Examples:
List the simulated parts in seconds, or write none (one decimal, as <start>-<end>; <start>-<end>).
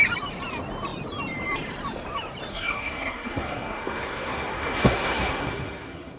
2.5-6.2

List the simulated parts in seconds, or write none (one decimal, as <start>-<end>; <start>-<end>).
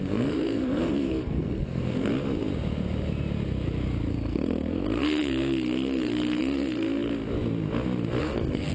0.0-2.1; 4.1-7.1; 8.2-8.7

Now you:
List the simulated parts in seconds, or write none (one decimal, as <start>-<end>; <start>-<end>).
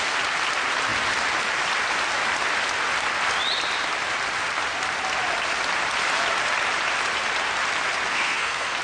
8.1-8.8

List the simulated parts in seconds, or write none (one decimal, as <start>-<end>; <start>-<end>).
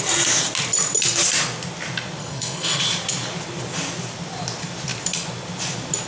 2.2-2.8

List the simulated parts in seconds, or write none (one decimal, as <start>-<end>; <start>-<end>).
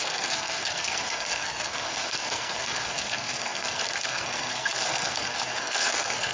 0.0-6.3